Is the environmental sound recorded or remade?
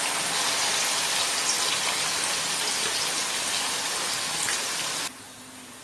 recorded